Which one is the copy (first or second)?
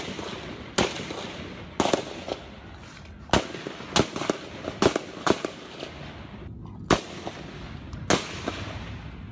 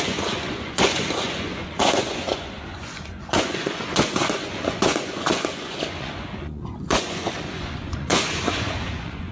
second